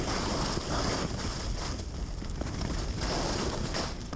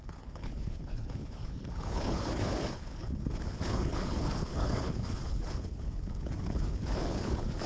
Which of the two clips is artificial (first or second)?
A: second